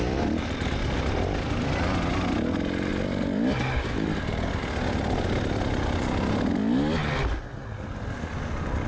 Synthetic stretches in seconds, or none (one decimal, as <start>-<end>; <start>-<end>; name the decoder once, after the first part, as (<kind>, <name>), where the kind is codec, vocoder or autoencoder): none